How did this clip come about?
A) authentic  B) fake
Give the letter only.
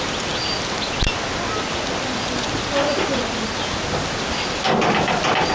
A